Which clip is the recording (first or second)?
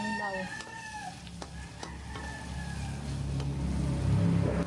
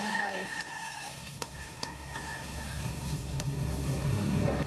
first